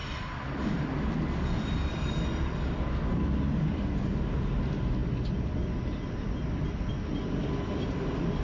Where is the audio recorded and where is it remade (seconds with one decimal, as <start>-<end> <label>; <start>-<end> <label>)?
0.0-8.4 recorded

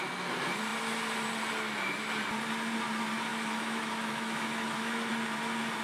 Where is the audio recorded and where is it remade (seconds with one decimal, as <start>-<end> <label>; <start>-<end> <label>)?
0.0-3.3 recorded; 3.3-5.1 remade; 5.1-5.8 recorded

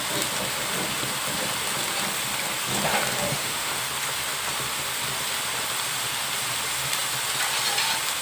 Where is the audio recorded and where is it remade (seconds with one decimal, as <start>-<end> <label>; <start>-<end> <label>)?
0.0-3.3 recorded; 3.3-3.8 remade; 3.8-8.2 recorded

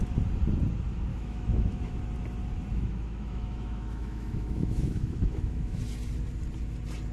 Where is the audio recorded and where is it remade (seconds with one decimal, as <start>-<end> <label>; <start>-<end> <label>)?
0.0-1.1 recorded; 1.1-2.0 remade; 2.0-2.7 recorded; 2.7-5.8 remade; 5.8-7.1 recorded

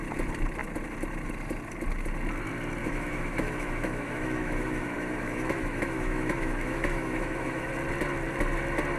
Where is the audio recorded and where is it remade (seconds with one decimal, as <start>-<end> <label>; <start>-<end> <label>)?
0.0-2.8 recorded; 2.8-7.7 remade; 7.7-9.0 recorded

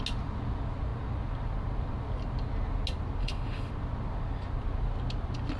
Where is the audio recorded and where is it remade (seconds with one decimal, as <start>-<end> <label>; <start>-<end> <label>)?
0.0-3.2 recorded; 3.2-3.7 remade; 3.7-5.6 recorded

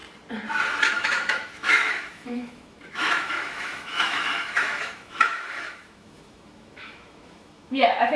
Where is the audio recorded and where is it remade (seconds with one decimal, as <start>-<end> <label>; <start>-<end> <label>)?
0.0-0.9 recorded; 0.9-8.2 remade

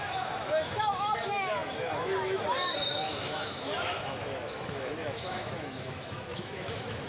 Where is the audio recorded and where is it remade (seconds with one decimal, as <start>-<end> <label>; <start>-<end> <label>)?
0.0-7.1 remade